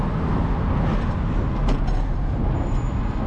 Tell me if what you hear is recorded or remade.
recorded